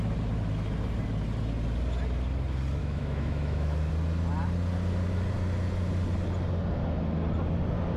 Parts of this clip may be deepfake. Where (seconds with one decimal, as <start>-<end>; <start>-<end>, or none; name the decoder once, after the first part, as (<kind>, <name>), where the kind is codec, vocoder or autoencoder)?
2.8-3.9 (autoencoder, DAC-VAE)